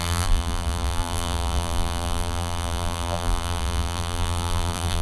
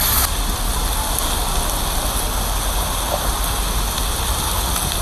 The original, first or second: second